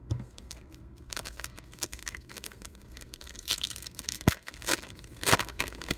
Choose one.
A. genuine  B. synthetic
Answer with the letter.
B